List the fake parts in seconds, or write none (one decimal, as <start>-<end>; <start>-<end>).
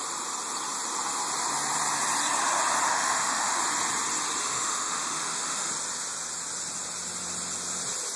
2.9-3.6; 4.4-5.7